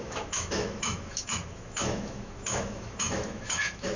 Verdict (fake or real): fake